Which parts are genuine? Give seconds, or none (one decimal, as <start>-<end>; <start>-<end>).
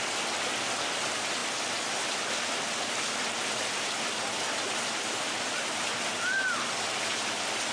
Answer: 0.0-7.7